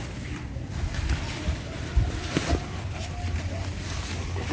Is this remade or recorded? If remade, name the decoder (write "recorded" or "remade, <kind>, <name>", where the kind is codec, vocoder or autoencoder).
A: recorded